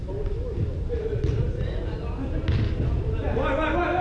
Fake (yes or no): no